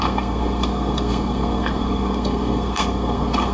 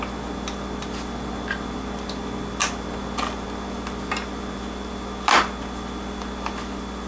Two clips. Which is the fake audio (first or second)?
first